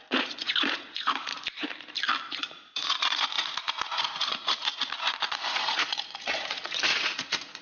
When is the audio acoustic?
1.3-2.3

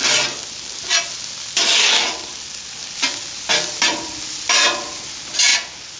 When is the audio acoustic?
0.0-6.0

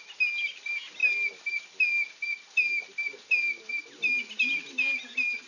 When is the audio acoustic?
0.0-5.5